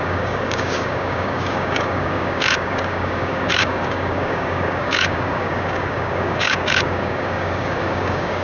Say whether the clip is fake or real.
fake